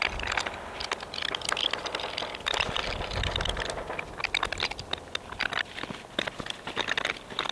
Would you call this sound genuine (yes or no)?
yes